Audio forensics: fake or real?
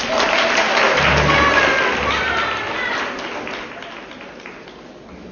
real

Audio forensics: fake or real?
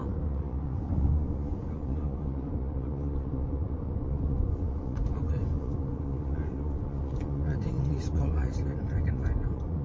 fake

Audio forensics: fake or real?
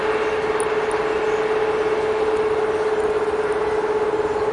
real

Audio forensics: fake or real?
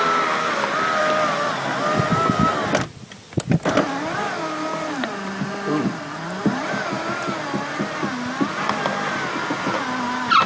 real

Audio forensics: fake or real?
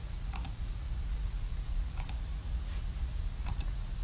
fake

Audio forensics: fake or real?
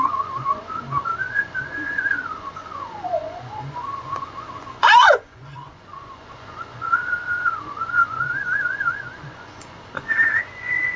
fake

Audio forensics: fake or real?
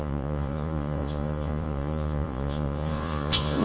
fake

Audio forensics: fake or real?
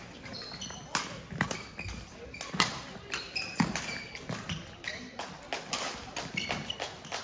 real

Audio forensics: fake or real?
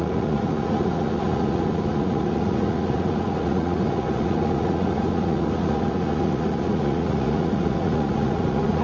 fake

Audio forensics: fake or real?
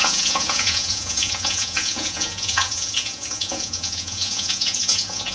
fake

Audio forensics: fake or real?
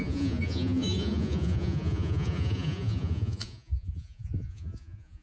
fake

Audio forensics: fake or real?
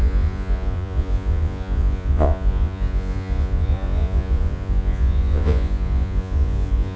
fake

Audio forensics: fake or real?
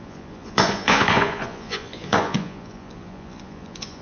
fake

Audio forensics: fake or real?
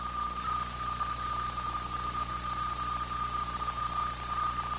real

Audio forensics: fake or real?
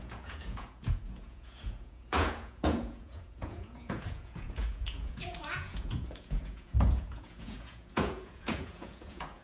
fake